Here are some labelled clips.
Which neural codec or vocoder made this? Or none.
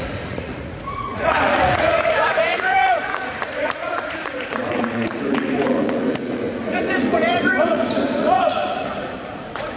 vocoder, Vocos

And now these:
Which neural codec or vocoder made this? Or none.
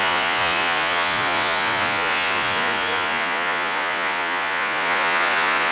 vocoder, Vocos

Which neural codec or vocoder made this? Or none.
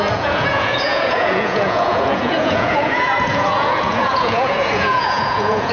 vocoder, Vocos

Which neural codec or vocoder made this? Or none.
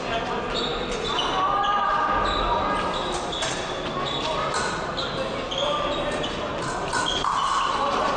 none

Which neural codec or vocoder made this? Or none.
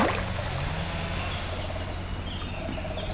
none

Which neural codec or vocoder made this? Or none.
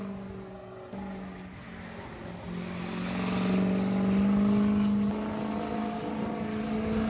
none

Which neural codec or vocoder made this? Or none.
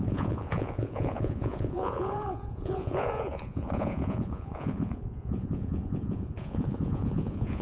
vocoder, Vocos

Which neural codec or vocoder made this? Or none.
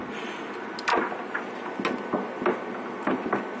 none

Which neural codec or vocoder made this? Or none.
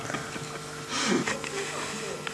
none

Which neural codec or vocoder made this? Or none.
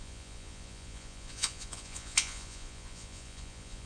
vocoder, Vocos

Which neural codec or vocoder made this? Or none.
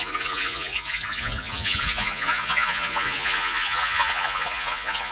vocoder, Vocos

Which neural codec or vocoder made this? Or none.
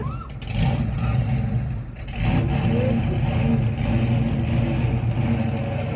none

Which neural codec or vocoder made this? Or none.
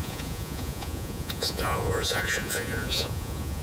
vocoder, Vocos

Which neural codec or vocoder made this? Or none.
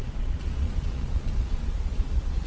vocoder, Vocos